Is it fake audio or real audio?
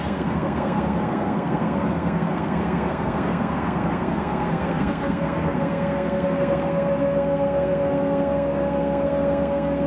fake